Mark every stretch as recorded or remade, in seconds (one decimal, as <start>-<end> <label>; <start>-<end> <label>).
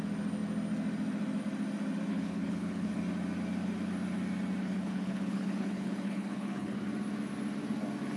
0.0-2.1 recorded; 2.1-3.0 remade; 3.0-4.6 recorded; 4.6-6.8 remade; 6.8-8.2 recorded